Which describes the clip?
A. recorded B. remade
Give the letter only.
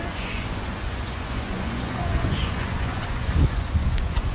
B